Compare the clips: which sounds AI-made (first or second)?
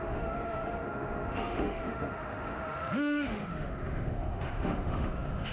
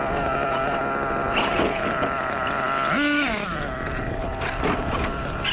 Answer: first